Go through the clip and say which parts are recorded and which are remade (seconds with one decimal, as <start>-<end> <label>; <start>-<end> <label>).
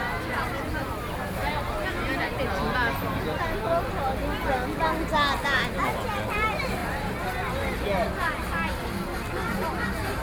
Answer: 0.0-10.2 recorded